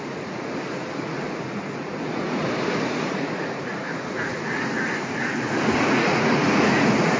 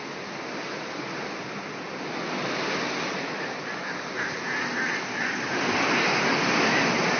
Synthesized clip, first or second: first